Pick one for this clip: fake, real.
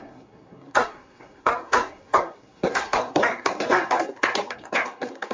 fake